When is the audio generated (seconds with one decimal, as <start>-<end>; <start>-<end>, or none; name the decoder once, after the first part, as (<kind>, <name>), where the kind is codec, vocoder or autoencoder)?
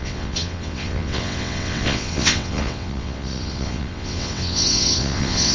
0.0-5.5 (vocoder, WaveNeXt)